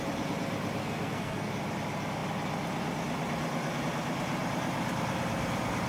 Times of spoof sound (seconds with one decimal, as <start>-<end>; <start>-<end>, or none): 0.8-1.5

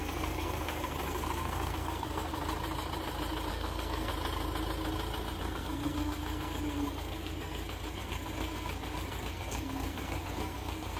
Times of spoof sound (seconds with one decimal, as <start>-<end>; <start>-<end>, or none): 0.0-2.3; 3.5-4.1; 5.4-11.0